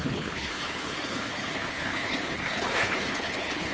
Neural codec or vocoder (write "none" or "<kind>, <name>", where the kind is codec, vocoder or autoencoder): codec, HILCodec